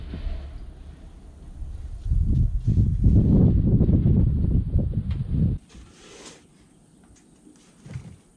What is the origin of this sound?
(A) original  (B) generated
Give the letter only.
A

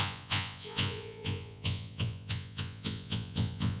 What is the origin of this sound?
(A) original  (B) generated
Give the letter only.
B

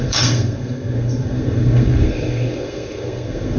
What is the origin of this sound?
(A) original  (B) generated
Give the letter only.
B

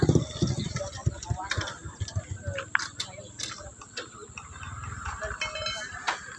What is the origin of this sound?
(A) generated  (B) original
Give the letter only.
B